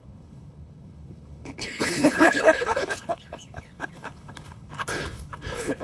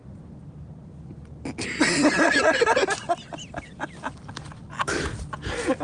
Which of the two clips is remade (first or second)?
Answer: first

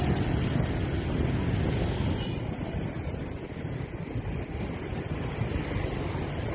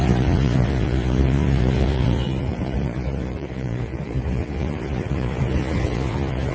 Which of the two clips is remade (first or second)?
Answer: second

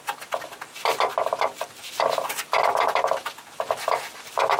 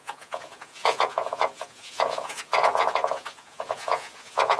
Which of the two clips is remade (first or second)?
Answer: second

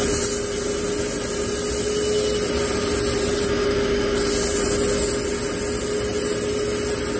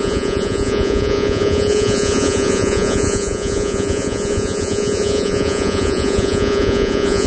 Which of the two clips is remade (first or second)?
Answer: second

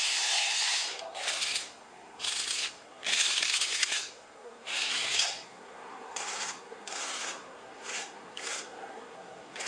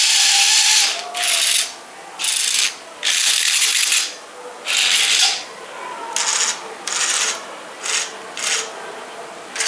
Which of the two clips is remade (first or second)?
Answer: first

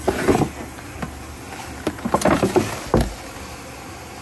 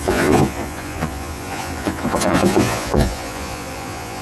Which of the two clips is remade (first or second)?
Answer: second